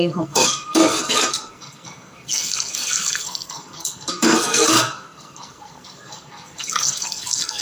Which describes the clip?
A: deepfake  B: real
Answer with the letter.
A